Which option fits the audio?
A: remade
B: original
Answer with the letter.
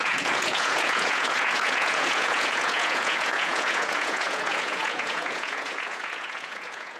A